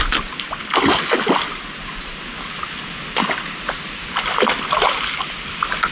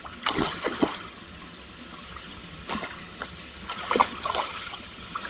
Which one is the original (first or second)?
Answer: first